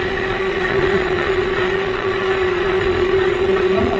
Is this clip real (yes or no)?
no